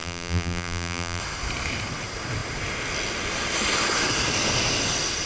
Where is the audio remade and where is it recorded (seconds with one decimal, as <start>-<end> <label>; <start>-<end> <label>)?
0.0-1.2 remade; 1.2-5.3 recorded